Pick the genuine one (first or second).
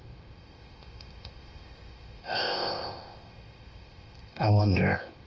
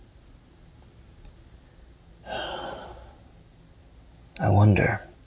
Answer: second